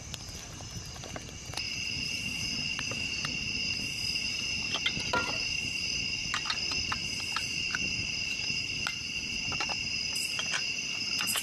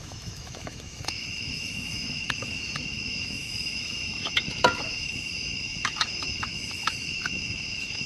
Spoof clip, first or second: second